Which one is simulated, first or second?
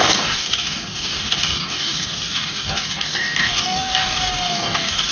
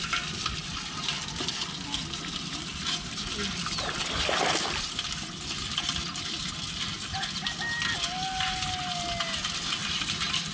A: first